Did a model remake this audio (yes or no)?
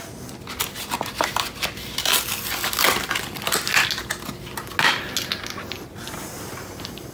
no